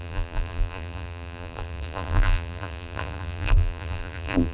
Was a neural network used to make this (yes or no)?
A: yes